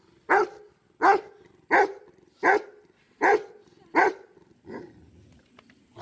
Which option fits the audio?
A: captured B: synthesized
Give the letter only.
A